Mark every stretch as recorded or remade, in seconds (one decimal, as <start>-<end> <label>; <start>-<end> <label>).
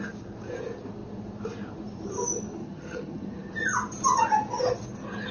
0.0-2.6 recorded; 2.6-3.5 remade; 3.5-5.3 recorded